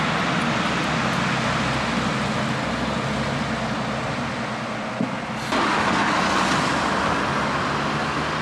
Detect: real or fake real